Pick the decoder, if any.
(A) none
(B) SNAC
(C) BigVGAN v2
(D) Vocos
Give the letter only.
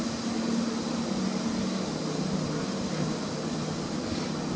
C